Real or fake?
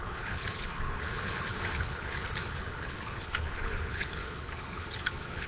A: fake